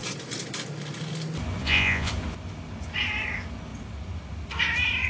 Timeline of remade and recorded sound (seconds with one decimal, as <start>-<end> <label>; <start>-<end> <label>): 0.0-1.6 recorded; 1.6-2.1 remade; 2.1-5.1 recorded